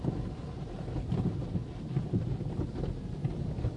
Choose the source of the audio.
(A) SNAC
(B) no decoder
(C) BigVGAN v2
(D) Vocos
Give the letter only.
B